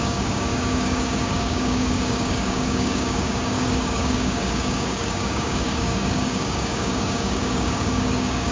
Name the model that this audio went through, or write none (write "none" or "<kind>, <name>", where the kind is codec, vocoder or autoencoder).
codec, DAC